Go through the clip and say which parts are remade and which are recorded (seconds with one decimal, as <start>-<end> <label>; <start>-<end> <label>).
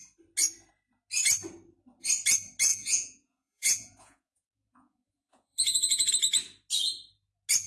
0.0-2.7 recorded; 2.7-6.1 remade; 6.1-7.7 recorded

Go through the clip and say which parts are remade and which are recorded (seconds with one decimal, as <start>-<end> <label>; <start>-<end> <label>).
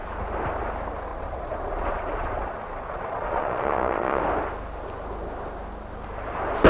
0.0-1.1 recorded; 1.1-4.2 remade; 4.2-6.7 recorded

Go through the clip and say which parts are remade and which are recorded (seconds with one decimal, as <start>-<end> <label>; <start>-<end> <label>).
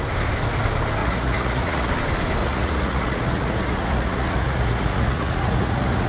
0.0-1.0 recorded; 1.0-1.9 remade; 1.9-2.4 recorded; 2.4-6.1 remade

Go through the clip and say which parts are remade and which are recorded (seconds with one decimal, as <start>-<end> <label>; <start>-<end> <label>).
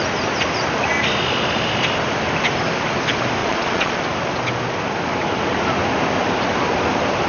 0.0-3.4 recorded; 3.4-4.0 remade; 4.0-7.3 recorded